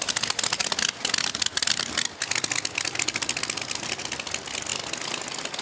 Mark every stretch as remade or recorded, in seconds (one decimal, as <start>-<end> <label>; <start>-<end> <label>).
0.0-5.6 recorded